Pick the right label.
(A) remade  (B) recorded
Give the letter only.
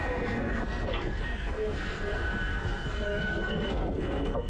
A